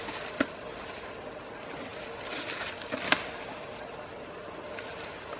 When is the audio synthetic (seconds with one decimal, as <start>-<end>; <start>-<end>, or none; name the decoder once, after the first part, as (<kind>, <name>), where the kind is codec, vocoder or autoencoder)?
none